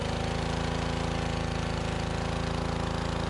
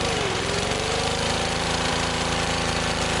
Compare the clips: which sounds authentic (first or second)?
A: first